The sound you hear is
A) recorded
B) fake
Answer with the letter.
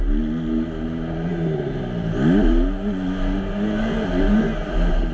A